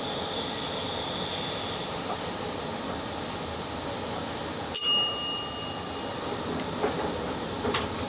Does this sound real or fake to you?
real